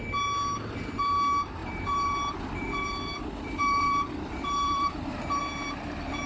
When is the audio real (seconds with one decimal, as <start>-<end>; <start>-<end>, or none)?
0.0-1.6; 5.4-6.3